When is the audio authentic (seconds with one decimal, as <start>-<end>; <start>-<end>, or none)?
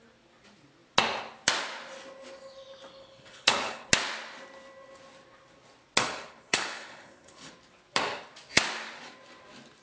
0.0-3.0; 3.9-6.0; 7.5-9.8